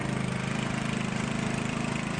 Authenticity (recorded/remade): remade